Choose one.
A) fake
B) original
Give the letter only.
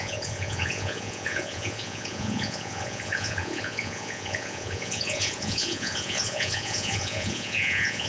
A